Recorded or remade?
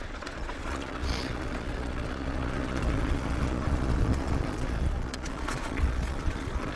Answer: remade